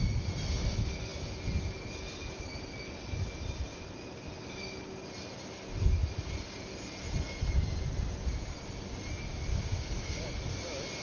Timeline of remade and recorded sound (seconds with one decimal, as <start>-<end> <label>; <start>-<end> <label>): 0.0-9.5 recorded; 9.5-10.3 remade; 10.3-11.0 recorded